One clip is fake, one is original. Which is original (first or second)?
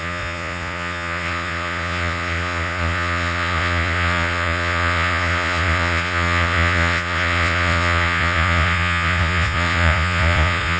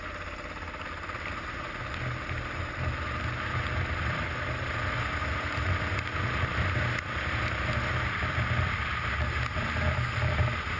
second